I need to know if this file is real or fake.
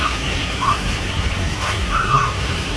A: fake